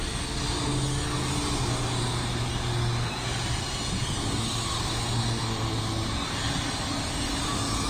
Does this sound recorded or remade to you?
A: recorded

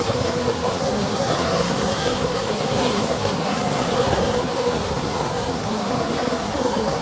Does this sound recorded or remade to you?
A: remade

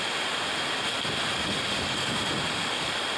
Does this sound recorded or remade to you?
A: recorded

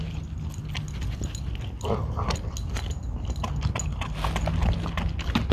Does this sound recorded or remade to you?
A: recorded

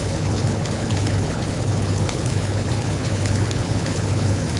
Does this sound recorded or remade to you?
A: remade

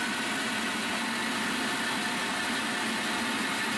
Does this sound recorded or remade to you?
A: recorded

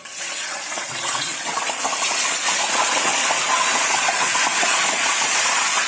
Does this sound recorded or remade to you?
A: remade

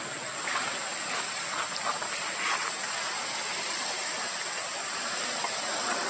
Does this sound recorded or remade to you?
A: recorded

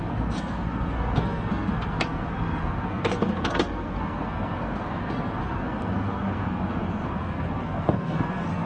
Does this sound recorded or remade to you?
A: remade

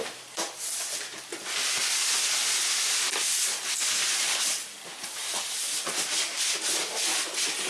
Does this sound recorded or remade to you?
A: recorded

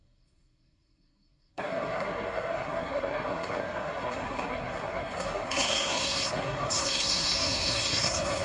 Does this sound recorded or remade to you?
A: remade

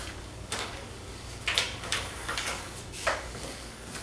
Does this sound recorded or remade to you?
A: remade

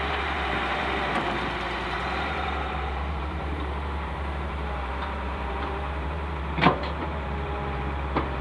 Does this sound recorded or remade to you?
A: remade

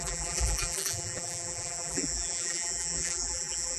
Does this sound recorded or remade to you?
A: remade